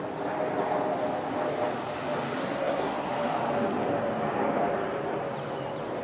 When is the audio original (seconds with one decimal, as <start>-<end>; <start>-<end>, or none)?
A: 0.0-2.4; 3.1-6.0